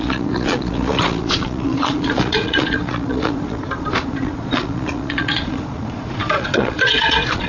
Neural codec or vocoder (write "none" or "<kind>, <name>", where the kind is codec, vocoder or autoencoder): vocoder, Vocos